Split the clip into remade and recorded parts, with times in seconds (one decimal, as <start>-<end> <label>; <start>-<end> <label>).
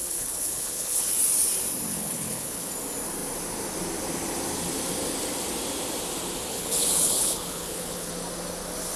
0.0-1.1 remade; 1.1-1.9 recorded; 1.9-2.7 remade; 2.7-6.5 recorded; 6.5-8.1 remade; 8.1-9.0 recorded